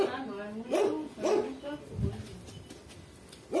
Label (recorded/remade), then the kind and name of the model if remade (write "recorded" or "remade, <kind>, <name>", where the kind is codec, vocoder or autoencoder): recorded